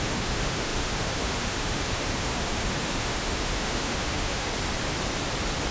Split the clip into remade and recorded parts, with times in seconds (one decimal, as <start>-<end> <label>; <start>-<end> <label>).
0.0-4.5 remade; 4.5-5.7 recorded